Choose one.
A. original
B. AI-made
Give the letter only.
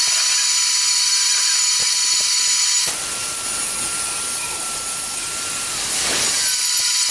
B